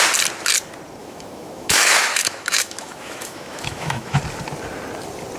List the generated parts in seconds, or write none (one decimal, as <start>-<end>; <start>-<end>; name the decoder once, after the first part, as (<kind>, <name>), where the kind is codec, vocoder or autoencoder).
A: 1.0-4.2 (autoencoder, DAC-VAE)